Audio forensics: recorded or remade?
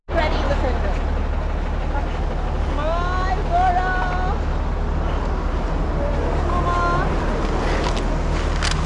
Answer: recorded